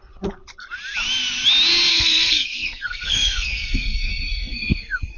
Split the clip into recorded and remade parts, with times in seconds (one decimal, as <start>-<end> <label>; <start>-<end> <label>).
0.0-1.9 recorded; 1.9-5.2 remade